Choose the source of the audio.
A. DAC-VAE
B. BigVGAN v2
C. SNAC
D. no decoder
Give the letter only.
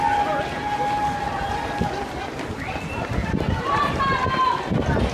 D